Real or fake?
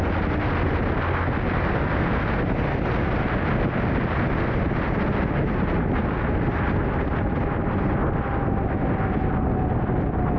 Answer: real